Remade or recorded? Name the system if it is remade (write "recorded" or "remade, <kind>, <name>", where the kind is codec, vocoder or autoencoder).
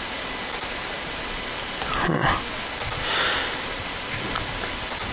recorded